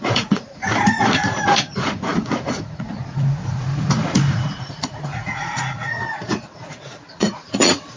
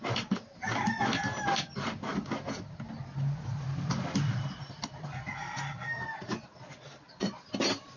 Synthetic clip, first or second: first